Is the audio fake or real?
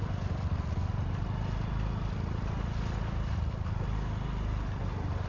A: real